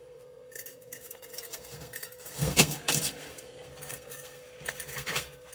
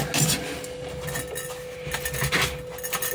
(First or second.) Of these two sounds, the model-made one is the first